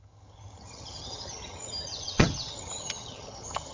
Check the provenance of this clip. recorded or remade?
remade